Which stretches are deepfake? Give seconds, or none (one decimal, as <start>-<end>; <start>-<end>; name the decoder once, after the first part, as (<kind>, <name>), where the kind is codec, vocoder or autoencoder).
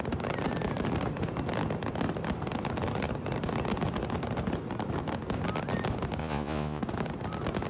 6.2-6.8 (vocoder, Vocos)